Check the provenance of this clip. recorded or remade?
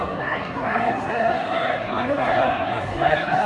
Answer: remade